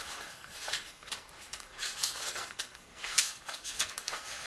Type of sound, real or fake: fake